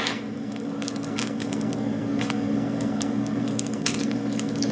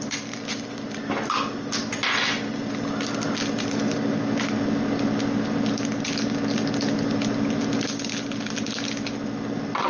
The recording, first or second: second